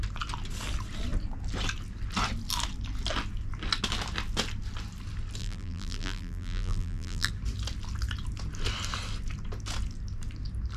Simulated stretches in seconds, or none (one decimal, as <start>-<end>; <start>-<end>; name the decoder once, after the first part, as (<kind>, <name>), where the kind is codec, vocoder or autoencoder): 5.4-7.3 (vocoder, BigVGAN v2)